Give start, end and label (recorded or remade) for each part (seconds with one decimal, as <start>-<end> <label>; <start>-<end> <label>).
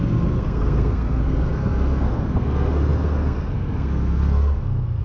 0.0-5.0 remade